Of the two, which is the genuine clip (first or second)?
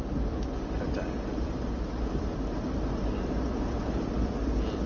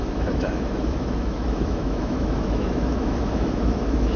first